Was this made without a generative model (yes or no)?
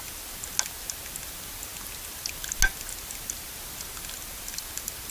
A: yes